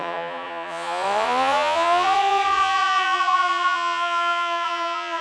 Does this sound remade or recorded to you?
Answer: remade